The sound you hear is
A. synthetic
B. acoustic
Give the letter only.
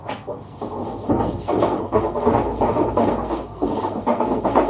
A